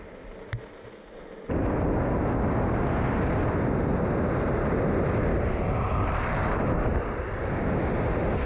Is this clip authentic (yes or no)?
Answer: yes